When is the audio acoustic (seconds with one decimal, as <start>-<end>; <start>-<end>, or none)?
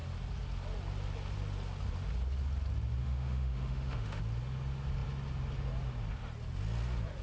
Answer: 0.0-3.0; 4.2-7.2